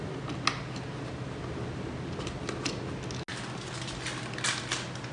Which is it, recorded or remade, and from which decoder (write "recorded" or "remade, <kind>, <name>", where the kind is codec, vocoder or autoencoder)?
recorded